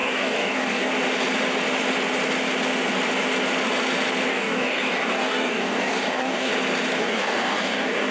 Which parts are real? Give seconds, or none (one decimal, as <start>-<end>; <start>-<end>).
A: 0.9-4.3; 6.5-7.0

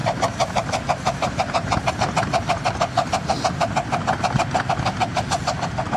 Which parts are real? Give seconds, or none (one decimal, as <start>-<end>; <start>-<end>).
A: 1.9-6.0